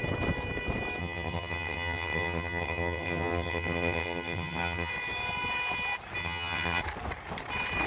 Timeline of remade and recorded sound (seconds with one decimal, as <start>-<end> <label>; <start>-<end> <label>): 0.0-1.0 recorded; 1.0-4.9 remade; 4.9-6.2 recorded; 6.2-6.8 remade; 6.8-7.9 recorded